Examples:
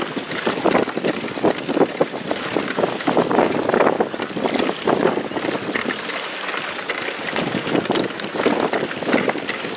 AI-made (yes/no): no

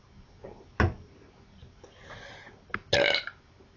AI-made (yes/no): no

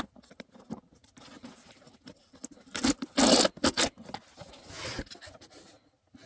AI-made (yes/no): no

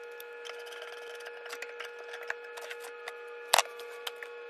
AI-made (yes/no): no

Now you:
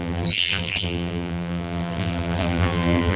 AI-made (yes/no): yes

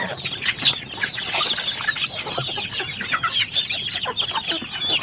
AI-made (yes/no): no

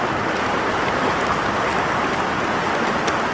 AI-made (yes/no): no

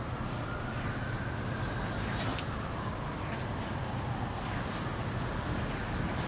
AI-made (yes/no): no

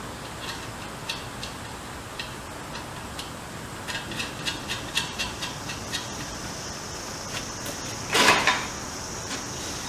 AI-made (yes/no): no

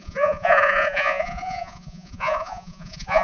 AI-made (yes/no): yes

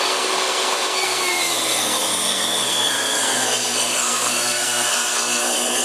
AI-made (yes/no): yes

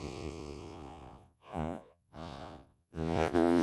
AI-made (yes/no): yes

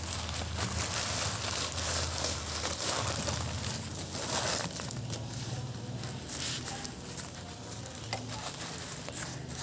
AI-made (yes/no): no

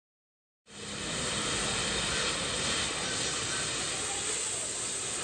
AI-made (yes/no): no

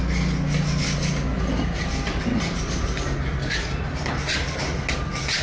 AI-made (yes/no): no